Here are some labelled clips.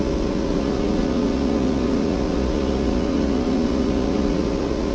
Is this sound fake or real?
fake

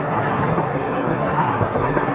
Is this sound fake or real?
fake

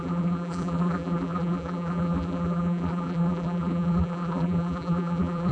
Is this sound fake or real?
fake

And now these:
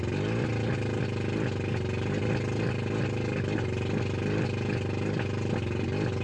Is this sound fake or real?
real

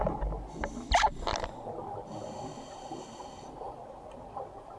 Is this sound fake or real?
real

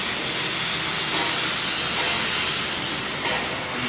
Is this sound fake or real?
real